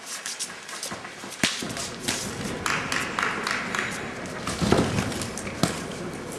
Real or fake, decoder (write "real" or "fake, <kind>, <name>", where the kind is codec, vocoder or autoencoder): real